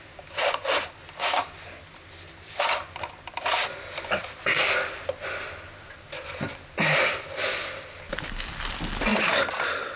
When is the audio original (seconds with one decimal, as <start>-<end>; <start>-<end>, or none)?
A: 0.0-10.0